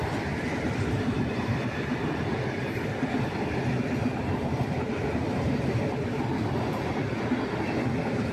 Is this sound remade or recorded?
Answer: remade